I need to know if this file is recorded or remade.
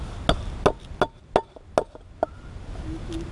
recorded